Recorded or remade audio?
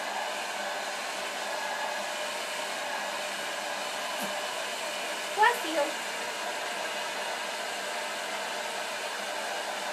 recorded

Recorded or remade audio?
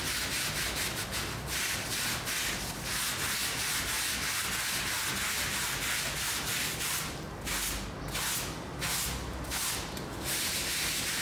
recorded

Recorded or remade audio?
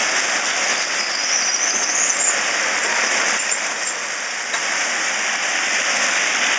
recorded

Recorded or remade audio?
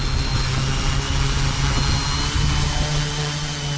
recorded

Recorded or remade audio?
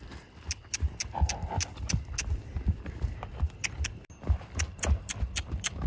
recorded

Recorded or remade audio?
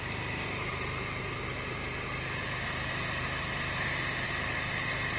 recorded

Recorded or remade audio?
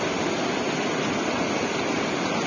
recorded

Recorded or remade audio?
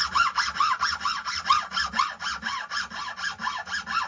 recorded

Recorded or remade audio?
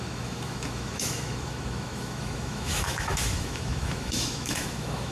remade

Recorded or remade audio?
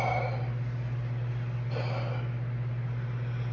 recorded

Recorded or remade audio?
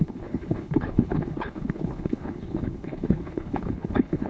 remade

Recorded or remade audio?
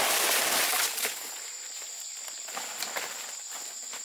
recorded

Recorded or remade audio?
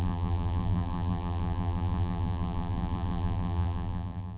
remade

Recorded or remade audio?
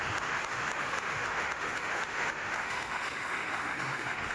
remade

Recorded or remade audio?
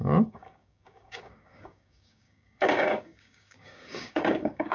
remade